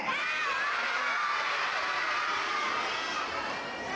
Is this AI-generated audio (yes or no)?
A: no